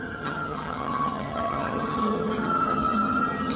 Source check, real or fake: fake